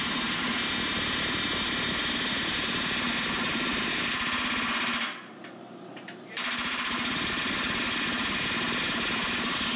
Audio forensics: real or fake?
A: real